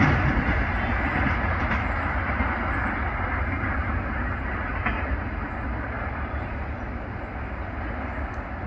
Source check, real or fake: real